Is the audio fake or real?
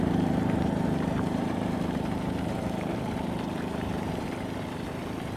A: fake